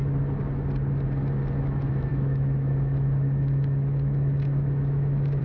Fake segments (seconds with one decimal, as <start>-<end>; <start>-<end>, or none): 1.6-5.4